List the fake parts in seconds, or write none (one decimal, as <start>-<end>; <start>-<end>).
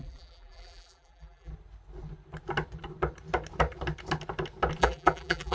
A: 0.0-1.5; 4.8-5.5